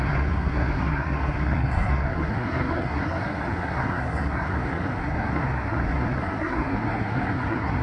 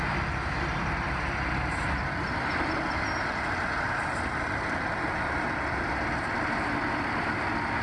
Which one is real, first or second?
second